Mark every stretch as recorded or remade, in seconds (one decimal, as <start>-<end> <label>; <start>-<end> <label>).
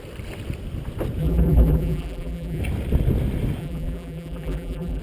0.0-1.2 recorded; 1.2-2.6 remade; 2.6-3.6 recorded; 3.6-5.0 remade